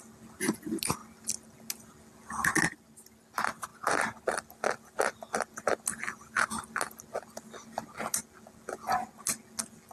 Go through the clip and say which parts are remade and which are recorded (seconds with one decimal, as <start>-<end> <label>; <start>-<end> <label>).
0.0-9.9 recorded